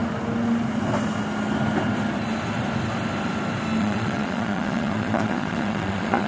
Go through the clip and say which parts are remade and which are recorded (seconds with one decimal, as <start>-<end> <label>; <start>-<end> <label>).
0.0-3.8 recorded; 3.8-6.3 remade